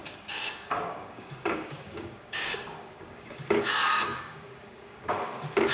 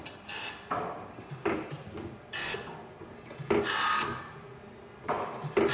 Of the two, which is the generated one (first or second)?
first